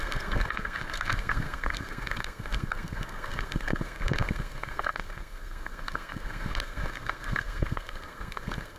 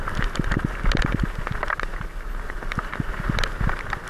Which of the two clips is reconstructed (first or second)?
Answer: first